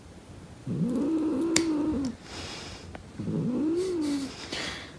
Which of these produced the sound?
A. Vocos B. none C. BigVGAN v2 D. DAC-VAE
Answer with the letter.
B